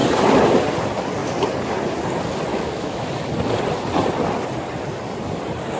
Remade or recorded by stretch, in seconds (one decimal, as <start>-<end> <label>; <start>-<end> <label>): 0.0-2.5 recorded; 2.5-3.1 remade; 3.1-5.8 recorded